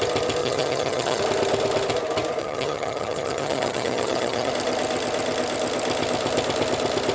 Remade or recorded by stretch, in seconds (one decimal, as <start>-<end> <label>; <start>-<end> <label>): 0.0-0.4 recorded; 0.4-1.2 remade; 1.2-2.4 recorded; 2.4-4.5 remade; 4.5-7.1 recorded